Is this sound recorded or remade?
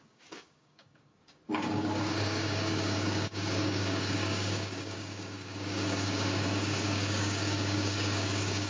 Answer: remade